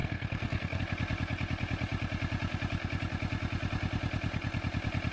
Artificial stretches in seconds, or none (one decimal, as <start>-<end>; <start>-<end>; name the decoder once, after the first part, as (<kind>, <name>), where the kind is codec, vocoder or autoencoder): 0.0-0.8 (codec, SNAC)